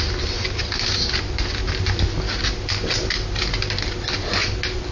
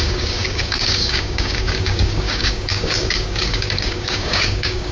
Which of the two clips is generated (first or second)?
second